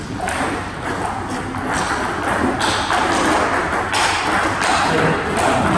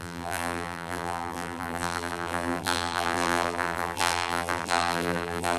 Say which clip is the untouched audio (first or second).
first